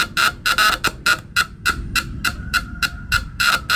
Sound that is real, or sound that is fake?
real